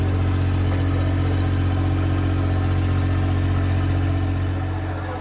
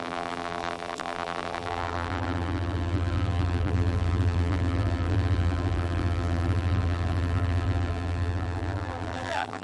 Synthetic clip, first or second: second